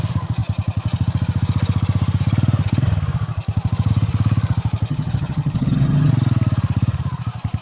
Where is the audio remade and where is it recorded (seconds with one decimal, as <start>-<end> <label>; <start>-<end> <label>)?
0.0-4.9 recorded; 4.9-6.1 remade; 6.1-7.6 recorded